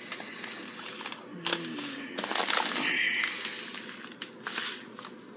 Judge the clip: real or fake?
real